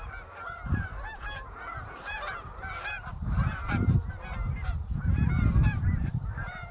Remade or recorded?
remade